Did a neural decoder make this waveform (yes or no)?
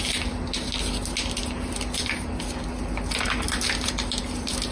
no